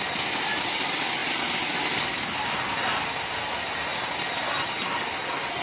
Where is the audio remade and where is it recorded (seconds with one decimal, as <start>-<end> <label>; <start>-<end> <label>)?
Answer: 0.0-5.6 recorded